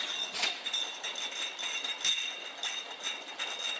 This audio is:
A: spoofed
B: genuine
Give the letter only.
B